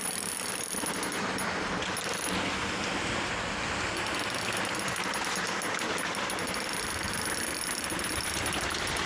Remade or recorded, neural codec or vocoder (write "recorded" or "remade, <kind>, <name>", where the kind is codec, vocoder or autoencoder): recorded